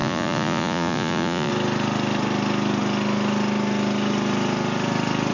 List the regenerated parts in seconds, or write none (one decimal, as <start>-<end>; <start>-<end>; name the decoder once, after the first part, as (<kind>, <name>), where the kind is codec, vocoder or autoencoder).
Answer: 0.0-1.5 (vocoder, Vocos)